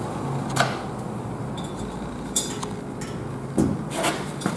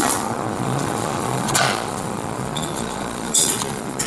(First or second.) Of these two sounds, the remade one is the second